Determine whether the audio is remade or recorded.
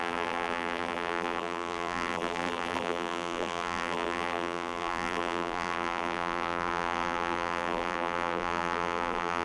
remade